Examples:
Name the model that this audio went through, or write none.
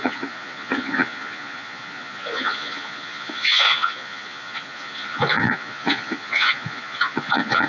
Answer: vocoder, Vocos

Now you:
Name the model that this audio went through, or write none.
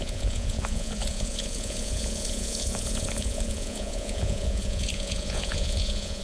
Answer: vocoder, Vocos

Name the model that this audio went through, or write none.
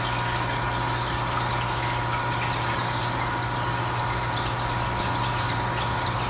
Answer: none